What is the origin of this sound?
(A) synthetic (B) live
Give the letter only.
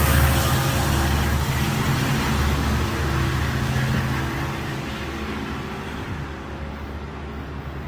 B